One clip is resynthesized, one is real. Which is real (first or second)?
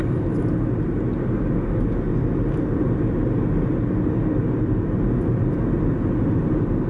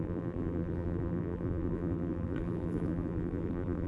first